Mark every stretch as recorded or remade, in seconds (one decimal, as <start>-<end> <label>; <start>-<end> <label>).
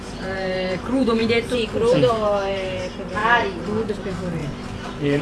0.0-1.2 remade; 1.2-2.1 recorded; 2.1-3.2 remade; 3.2-3.9 recorded; 3.9-5.2 remade